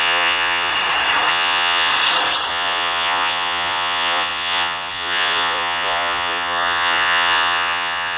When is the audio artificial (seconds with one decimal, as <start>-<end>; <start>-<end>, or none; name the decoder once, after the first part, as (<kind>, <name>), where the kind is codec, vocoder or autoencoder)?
0.0-0.7 (vocoder, Vocos); 1.3-1.9; 2.5-8.2